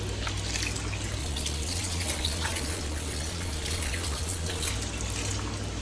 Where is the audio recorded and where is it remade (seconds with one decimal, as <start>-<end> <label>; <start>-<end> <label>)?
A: 0.0-1.2 recorded; 1.2-4.7 remade; 4.7-5.8 recorded